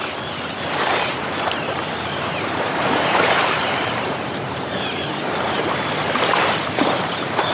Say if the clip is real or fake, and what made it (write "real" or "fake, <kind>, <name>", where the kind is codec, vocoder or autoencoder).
fake, vocoder, BigVGAN v2